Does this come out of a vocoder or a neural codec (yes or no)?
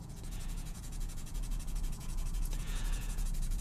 yes